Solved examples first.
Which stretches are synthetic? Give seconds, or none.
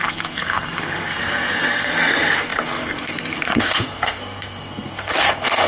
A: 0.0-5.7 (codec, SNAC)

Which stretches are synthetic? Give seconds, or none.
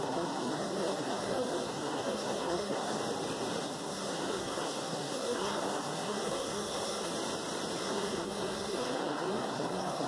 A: 0.0-3.0 (codec, SNAC); 3.6-7.1; 7.8-10.1